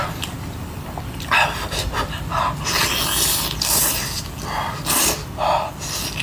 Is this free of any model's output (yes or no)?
yes